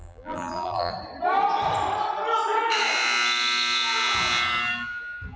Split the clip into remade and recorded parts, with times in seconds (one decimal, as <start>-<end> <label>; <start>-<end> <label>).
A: 0.0-0.9 remade; 0.9-5.4 recorded